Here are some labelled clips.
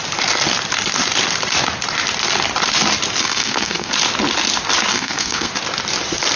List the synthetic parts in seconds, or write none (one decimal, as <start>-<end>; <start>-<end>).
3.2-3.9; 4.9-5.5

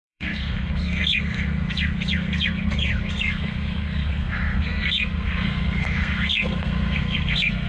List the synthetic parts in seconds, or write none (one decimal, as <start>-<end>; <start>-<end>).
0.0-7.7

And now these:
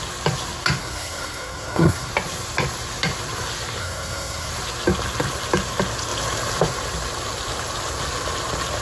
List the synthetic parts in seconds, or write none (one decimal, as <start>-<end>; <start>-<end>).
0.8-2.1; 3.8-4.5